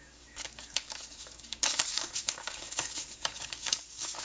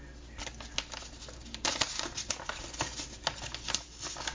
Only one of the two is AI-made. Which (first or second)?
first